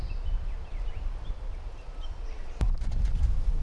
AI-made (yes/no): no